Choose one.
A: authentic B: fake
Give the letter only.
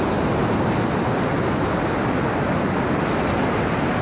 A